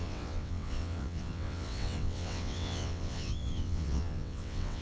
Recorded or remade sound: remade